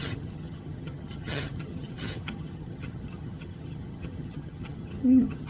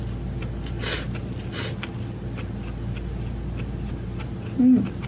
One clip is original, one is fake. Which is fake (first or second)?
first